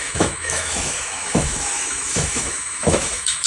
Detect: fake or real fake